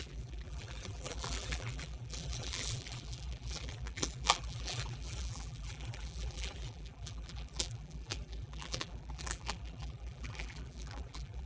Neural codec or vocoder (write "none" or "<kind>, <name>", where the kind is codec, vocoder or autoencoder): vocoder, BigVGAN v2